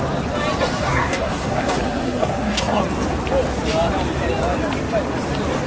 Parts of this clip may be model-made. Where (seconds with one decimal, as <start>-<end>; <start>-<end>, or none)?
0.8-2.8